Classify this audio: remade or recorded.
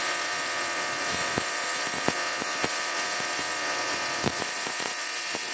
remade